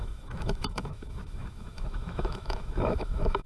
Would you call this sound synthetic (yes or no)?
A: yes